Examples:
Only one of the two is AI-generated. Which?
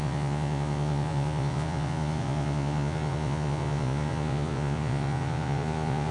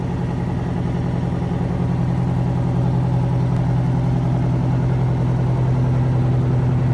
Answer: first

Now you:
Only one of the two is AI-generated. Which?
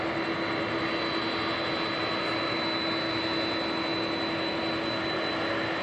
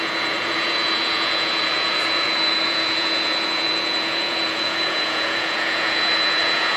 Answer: second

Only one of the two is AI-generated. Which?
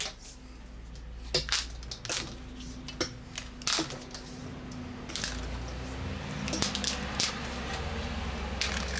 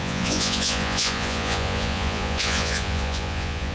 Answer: second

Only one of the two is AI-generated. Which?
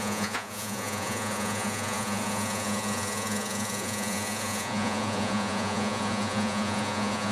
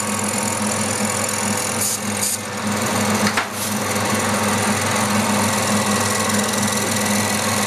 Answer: first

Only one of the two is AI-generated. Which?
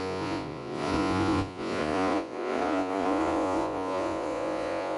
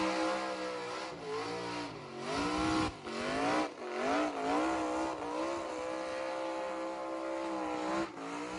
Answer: first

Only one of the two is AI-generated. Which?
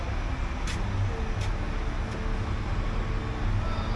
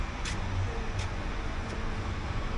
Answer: second